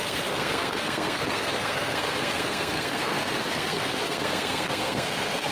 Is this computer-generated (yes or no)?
yes